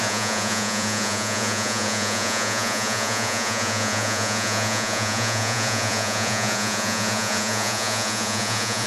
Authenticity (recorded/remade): remade